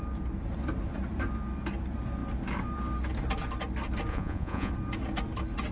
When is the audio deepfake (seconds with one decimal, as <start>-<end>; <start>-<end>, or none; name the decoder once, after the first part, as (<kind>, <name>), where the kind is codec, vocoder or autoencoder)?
4.1-4.7 (vocoder, Vocos)